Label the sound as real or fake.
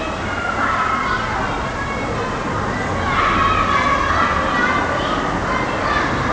real